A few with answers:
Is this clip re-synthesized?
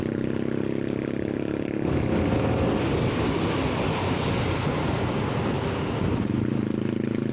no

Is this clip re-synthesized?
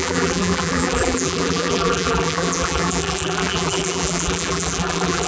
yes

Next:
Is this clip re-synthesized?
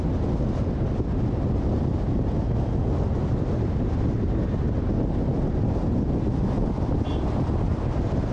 no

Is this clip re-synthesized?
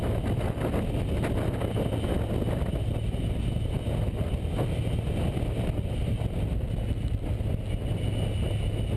no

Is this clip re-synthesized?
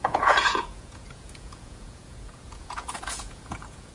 yes